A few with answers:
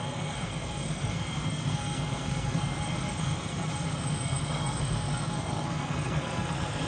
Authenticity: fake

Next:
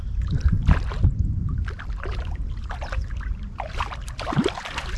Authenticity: real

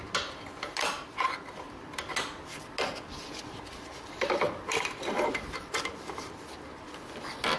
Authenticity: real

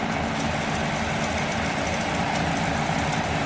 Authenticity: real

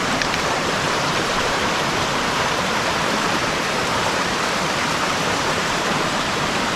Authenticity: fake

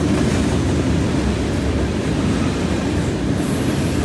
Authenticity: real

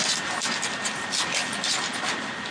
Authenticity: real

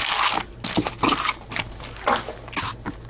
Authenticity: real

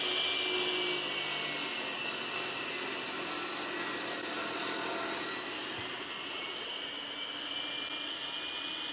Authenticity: real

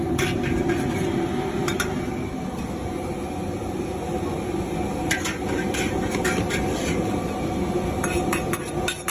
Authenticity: real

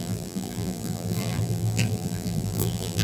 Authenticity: fake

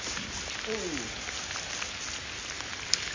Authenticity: real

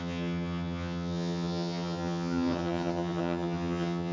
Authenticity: fake